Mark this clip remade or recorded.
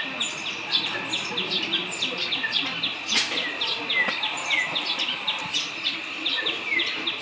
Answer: recorded